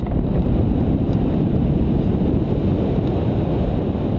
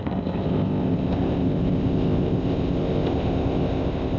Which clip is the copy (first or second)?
second